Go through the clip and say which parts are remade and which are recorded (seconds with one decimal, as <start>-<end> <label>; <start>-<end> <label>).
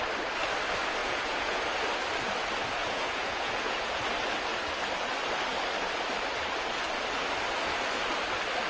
0.0-1.0 recorded; 1.0-1.6 remade; 1.6-2.8 recorded; 2.8-4.0 remade; 4.0-8.7 recorded